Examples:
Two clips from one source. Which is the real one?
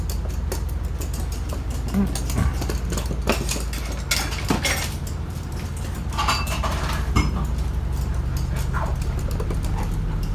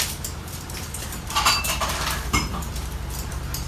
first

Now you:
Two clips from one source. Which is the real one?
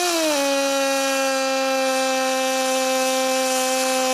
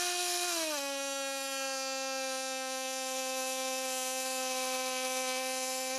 first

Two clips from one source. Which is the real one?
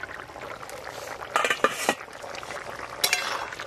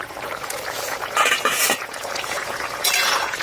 first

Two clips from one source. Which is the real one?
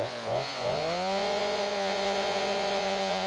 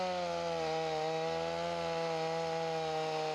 second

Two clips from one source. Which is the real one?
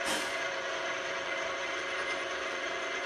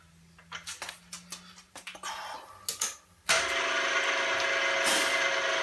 second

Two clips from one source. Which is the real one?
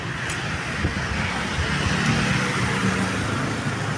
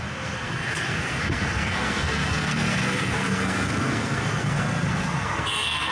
first